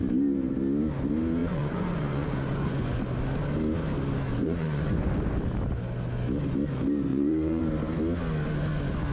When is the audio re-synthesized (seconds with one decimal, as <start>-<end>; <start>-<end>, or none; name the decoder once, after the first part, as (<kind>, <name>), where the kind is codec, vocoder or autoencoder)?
1.4-3.0 (vocoder, Vocos); 4.3-5.1; 7.1-7.6